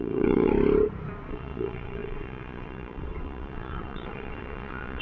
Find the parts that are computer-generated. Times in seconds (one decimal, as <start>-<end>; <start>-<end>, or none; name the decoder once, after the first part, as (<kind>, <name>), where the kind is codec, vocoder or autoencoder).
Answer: 0.0-0.5 (vocoder, WaveNeXt); 1.3-5.0